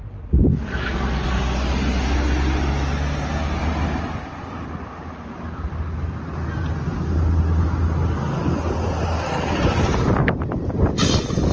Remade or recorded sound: recorded